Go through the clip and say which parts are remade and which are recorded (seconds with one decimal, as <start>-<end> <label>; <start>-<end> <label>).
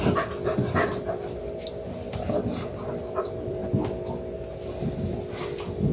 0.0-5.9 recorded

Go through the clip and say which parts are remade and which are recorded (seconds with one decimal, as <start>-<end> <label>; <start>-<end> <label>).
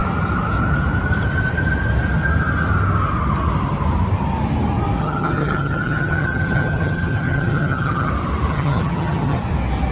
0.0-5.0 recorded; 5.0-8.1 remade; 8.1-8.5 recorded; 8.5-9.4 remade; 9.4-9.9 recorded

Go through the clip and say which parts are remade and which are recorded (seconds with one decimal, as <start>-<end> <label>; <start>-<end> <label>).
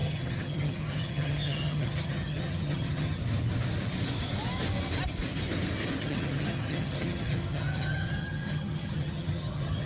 0.0-3.2 remade; 3.2-6.0 recorded; 6.0-9.9 remade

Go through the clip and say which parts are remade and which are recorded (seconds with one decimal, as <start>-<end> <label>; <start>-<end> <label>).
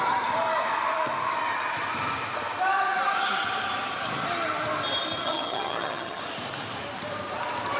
0.0-5.2 recorded; 5.2-6.2 remade; 6.2-7.8 recorded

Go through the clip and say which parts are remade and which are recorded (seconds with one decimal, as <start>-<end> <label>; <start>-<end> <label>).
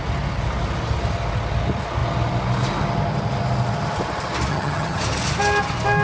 0.0-4.5 recorded; 4.5-5.0 remade; 5.0-6.0 recorded